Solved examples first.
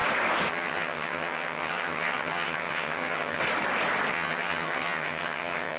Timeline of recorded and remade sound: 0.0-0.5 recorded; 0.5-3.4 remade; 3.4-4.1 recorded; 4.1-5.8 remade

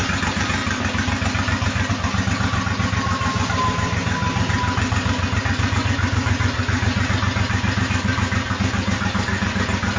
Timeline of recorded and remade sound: 0.0-10.0 recorded

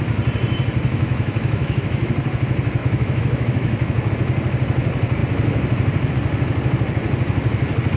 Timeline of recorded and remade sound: 0.0-0.9 recorded; 0.9-2.1 remade; 2.1-2.8 recorded; 2.8-4.1 remade; 4.1-8.0 recorded